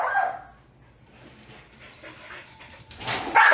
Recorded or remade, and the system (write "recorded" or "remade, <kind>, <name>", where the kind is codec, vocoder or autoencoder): recorded